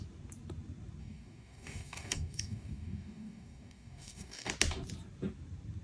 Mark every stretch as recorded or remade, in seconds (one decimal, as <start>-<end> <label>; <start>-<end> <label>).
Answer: 0.0-1.0 recorded; 1.0-4.5 remade; 4.5-5.8 recorded